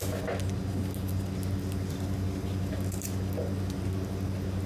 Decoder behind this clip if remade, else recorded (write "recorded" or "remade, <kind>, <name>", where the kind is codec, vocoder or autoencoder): recorded